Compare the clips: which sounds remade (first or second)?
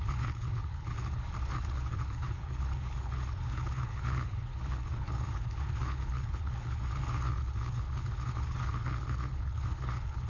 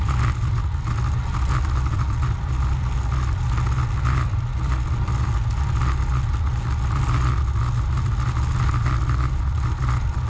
first